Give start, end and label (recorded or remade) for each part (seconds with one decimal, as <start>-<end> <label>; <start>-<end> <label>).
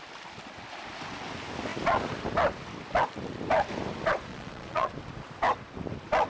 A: 0.0-4.3 recorded; 4.3-4.9 remade; 4.9-6.3 recorded